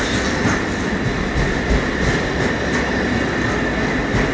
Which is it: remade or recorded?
recorded